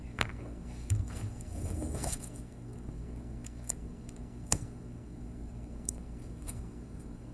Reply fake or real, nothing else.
fake